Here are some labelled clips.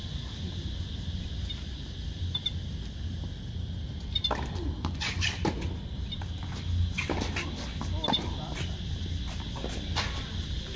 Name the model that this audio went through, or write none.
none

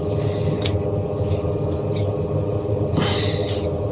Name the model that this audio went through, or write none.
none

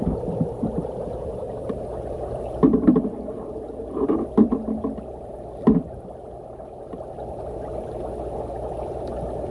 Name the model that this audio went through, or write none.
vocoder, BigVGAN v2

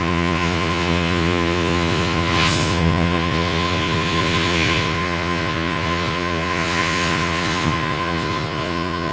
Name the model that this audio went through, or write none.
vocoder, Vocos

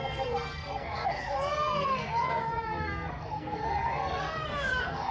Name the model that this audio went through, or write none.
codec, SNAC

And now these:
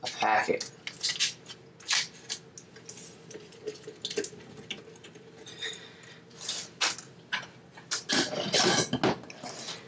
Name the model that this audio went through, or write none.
none